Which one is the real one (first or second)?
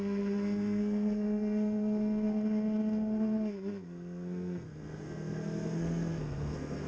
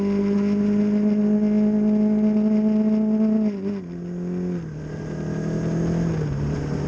second